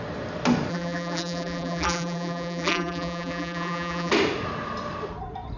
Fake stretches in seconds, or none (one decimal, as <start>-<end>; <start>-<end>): 0.7-4.1